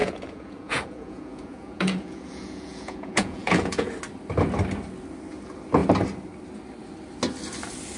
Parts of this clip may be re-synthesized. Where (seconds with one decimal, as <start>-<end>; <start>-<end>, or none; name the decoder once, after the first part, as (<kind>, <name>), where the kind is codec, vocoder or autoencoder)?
0.0-3.9 (vocoder, Vocos)